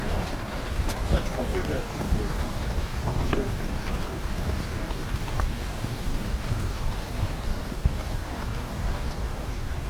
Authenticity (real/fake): fake